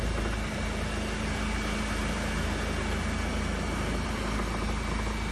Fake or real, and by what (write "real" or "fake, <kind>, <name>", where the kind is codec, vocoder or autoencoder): real